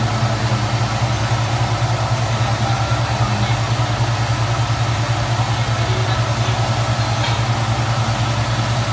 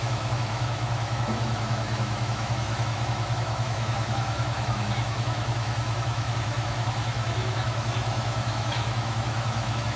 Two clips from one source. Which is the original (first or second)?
first